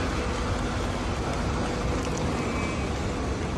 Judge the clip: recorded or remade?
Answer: recorded